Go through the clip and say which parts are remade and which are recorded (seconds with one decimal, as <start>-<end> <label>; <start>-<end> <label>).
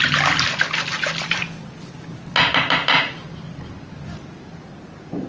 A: 0.0-5.3 recorded